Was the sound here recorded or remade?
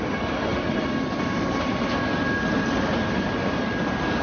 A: recorded